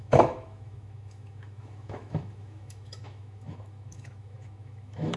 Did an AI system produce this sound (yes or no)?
yes